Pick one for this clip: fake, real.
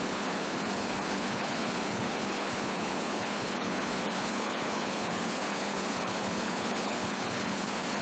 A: fake